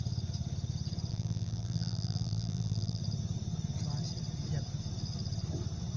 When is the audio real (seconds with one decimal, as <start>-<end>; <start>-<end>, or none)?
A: 0.0-1.1; 3.0-6.0